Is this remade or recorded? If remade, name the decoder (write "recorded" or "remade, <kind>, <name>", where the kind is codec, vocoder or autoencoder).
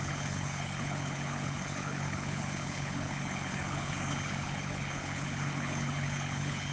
remade, codec, HILCodec